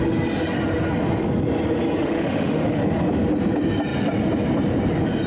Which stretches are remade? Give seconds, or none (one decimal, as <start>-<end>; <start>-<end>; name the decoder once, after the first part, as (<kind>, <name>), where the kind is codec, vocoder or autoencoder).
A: 2.0-2.8 (autoencoder, DAC-VAE)